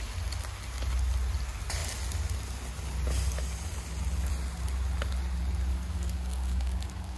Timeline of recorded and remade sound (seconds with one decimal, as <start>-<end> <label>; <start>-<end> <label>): 0.0-5.7 recorded; 5.7-7.2 remade